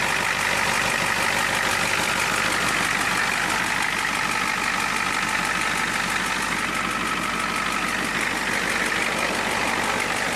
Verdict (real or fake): real